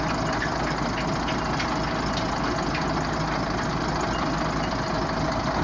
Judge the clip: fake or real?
real